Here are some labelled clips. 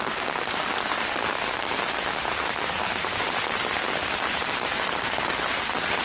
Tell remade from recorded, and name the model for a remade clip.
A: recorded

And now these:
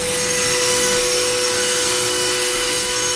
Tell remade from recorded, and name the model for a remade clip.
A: remade, codec, SNAC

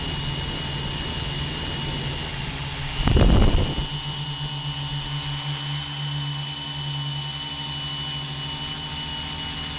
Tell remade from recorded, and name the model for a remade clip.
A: recorded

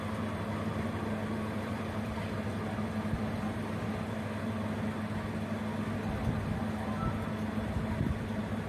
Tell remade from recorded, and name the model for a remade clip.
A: recorded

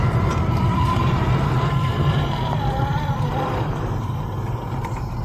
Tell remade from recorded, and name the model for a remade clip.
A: remade, vocoder, BigVGAN v2